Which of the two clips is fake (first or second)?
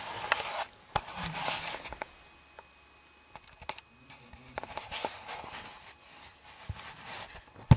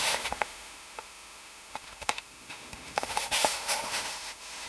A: second